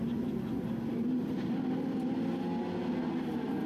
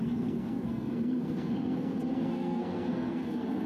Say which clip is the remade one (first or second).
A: second